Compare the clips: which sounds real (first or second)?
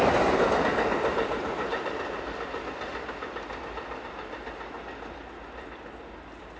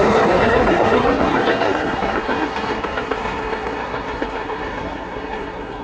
first